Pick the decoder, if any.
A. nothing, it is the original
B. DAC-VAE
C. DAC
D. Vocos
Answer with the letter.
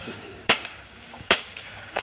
C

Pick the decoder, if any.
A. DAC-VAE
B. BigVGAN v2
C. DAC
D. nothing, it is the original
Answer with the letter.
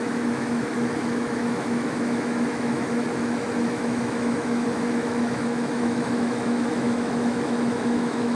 A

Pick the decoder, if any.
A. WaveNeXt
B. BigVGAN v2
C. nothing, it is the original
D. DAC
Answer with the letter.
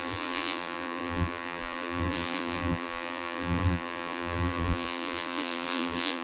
B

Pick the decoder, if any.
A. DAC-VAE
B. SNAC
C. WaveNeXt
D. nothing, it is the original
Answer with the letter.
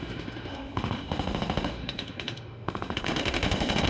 A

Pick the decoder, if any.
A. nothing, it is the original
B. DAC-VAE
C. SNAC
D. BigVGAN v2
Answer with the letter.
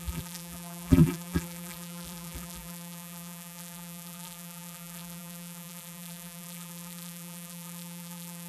D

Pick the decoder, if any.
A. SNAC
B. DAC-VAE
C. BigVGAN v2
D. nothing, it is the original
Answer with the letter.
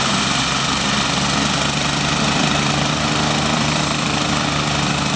C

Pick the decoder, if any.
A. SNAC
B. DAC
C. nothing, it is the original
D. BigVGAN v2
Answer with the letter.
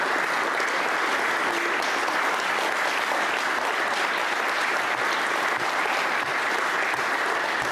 C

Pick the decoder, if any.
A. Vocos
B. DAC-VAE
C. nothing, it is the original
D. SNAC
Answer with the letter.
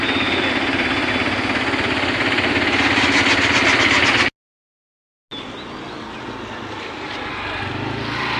C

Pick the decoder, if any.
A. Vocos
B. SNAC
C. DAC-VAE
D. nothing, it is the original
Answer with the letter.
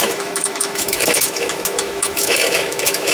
C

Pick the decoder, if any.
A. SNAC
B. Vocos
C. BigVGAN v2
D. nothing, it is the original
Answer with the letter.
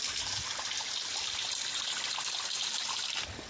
C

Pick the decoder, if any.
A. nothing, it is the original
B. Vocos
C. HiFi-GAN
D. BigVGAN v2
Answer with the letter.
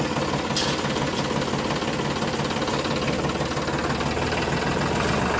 A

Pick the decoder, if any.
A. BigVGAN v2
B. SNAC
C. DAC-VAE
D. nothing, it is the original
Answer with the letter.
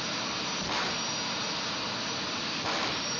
A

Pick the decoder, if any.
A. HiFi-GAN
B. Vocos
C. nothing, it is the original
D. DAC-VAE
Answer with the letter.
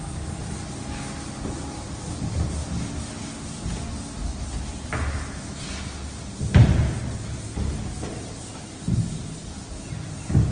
C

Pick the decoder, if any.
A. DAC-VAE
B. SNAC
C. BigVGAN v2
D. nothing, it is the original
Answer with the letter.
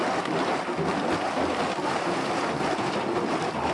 D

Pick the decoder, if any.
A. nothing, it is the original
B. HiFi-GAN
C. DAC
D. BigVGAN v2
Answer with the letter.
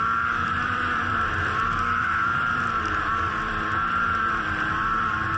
D